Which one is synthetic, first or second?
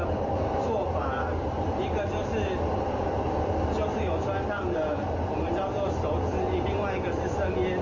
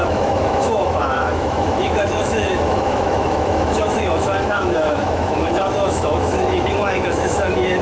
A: second